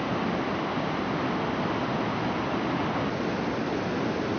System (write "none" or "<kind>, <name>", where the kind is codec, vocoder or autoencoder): none